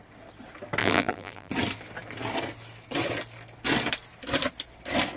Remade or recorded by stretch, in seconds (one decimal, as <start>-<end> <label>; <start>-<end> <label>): 0.0-0.8 recorded; 0.8-1.5 remade; 1.5-5.2 recorded